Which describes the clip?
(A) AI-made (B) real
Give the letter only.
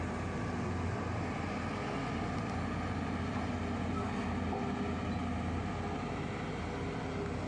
B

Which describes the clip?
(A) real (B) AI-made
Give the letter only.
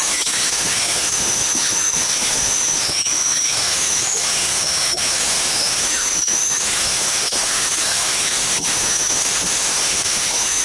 B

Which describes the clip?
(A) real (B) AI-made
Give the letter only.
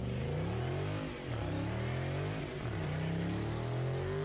A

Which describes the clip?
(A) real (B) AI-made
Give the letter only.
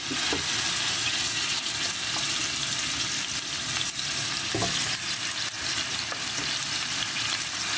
A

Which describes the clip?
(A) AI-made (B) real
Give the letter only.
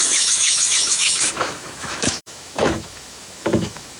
A